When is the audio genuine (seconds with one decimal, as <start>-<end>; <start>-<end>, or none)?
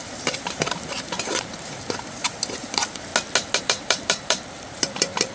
3.1-3.6